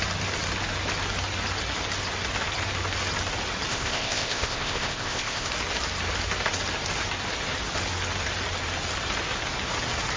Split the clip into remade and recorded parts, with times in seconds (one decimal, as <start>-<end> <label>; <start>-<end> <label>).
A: 0.0-3.7 recorded; 3.7-5.5 remade; 5.5-10.2 recorded